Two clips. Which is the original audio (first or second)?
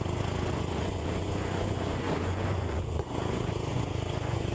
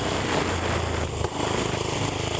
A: second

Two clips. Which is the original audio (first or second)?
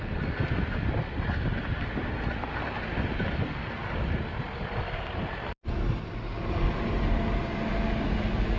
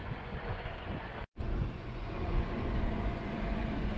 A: first